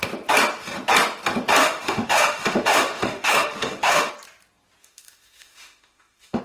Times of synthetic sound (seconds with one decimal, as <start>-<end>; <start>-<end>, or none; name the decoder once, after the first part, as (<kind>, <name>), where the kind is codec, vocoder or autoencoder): 1.6-4.1 (autoencoder, DAC-VAE); 4.8-6.4